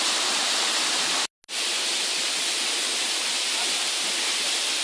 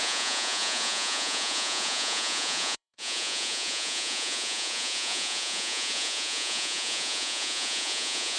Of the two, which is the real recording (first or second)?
first